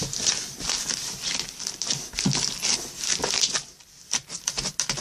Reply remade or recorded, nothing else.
recorded